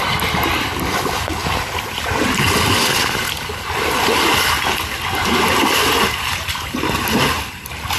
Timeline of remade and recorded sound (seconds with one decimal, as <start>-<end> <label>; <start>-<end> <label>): 0.0-8.0 recorded